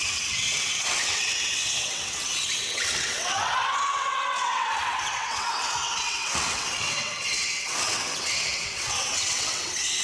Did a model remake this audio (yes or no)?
yes